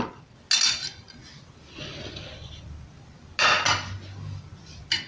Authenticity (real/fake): real